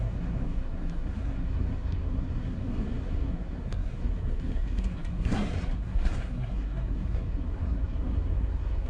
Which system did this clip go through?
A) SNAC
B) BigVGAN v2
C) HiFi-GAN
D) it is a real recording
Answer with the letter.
A